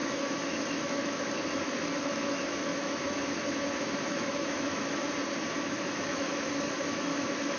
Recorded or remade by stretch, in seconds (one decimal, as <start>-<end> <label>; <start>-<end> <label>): 0.0-5.0 remade; 5.0-5.6 recorded; 5.6-7.6 remade

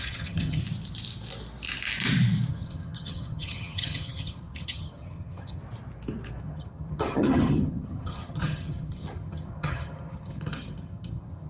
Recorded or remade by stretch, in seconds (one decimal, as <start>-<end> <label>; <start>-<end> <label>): 0.0-0.6 remade; 0.6-2.5 recorded; 2.5-5.6 remade; 5.6-6.4 recorded; 6.4-11.5 remade